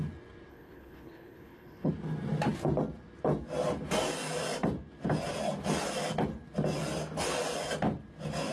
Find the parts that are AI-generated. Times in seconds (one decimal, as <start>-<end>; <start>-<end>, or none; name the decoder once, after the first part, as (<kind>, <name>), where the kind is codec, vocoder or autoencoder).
0.5-1.9 (codec, HILCodec)